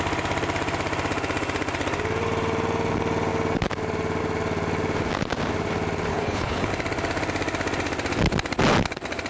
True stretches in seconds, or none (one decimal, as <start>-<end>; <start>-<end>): 0.0-6.1; 6.7-9.3